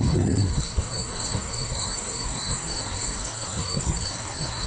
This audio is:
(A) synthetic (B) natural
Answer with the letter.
A